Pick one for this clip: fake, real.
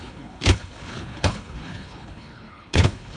fake